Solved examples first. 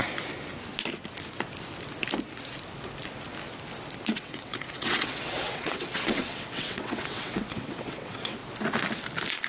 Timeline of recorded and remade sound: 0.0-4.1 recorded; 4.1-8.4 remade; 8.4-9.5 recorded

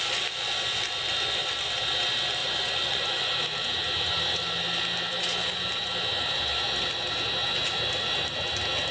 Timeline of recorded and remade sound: 0.0-2.4 recorded; 2.4-3.3 remade; 3.3-8.9 recorded

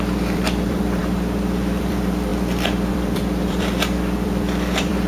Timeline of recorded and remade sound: 0.0-1.0 remade; 1.0-1.8 recorded; 1.8-2.3 remade; 2.3-2.9 recorded; 2.9-5.1 remade

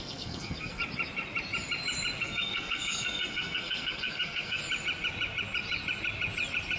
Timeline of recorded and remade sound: 0.0-0.8 remade; 0.8-2.2 recorded; 2.2-4.6 remade; 4.6-6.8 recorded

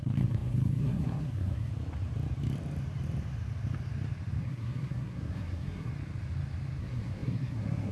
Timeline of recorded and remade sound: 0.0-1.7 remade; 1.7-4.4 recorded; 4.4-5.9 remade; 5.9-6.8 recorded; 6.8-7.9 remade